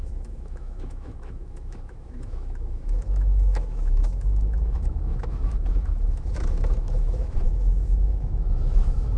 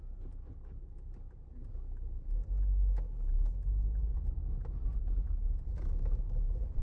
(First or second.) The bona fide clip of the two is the second